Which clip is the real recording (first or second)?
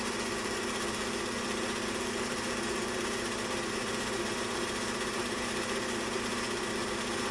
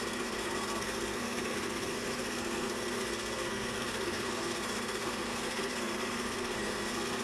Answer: first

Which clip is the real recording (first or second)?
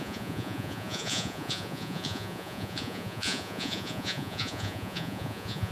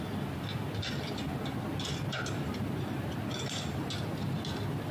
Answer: second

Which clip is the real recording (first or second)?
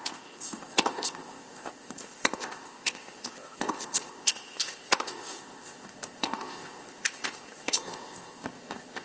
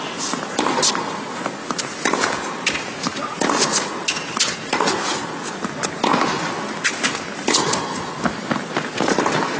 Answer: second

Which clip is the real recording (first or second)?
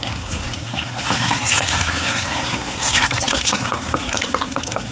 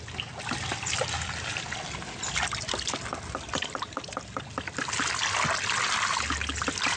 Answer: second